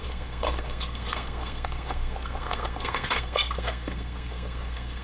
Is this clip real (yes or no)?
no